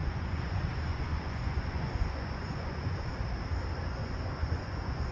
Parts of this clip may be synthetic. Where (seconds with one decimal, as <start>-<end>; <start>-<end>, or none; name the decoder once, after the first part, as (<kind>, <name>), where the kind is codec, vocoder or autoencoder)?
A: 0.0-3.1 (vocoder, Vocos); 4.0-5.1